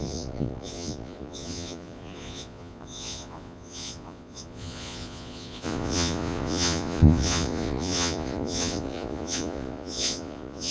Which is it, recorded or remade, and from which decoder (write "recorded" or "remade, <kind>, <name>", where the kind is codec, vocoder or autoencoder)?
remade, vocoder, Vocos